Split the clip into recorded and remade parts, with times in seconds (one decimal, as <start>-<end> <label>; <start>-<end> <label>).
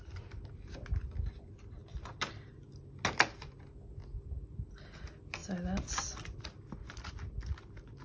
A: 0.0-8.0 recorded